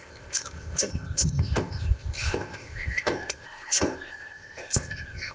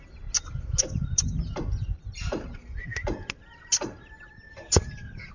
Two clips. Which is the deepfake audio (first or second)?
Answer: first